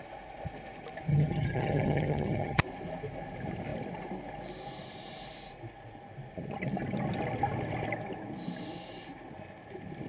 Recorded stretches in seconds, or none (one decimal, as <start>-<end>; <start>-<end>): 0.0-1.1; 2.6-10.1